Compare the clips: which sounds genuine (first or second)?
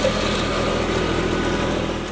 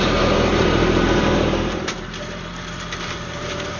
first